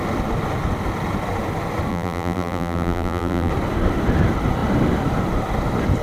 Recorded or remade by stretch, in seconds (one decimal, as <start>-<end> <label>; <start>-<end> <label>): 0.0-1.9 recorded; 1.9-3.5 remade; 3.5-6.0 recorded